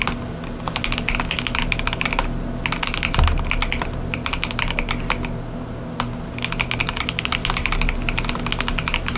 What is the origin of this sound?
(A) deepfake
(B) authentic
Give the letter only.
B